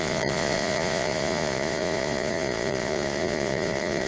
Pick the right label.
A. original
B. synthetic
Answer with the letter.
B